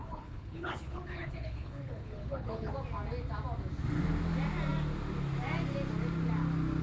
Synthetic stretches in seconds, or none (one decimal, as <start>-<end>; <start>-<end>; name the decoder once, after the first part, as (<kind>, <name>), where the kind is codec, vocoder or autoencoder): 0.0-2.7 (codec, HILCodec)